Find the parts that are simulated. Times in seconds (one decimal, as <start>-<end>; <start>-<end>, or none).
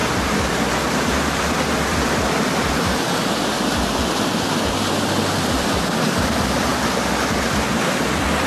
0.0-4.9